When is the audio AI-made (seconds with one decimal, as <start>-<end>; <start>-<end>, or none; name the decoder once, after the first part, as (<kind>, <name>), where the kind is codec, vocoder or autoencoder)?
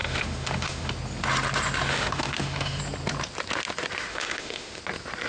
0.0-0.9 (autoencoder, DAC-VAE); 1.9-2.8; 4.1-4.8